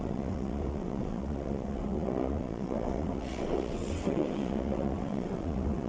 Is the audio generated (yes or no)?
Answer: yes